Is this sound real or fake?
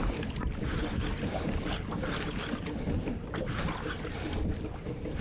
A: real